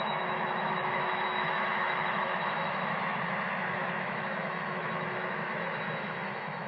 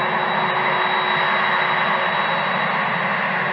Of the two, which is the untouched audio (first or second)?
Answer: second